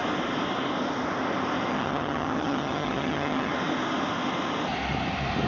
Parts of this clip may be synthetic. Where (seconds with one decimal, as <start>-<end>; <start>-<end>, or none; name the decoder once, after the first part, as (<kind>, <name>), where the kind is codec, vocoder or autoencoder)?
1.7-3.5 (vocoder, HiFi-GAN)